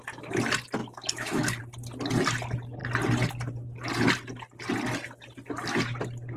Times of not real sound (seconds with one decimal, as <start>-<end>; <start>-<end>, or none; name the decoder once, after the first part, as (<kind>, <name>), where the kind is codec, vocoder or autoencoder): 0.8-1.6 (autoencoder, DAC-VAE)